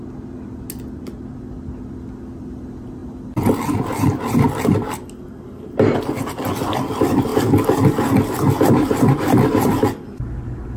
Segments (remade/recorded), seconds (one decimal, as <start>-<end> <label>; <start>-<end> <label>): 0.0-10.8 recorded